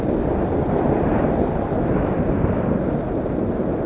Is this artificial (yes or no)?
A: no